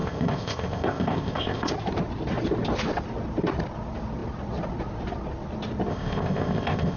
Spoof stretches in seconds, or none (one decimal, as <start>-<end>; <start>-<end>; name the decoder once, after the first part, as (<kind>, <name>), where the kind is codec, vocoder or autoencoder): 0.0-1.7 (codec, ZipCodec); 5.9-7.0